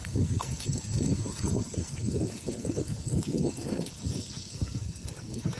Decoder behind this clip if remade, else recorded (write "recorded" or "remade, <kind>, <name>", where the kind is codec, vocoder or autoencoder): remade, codec, SNAC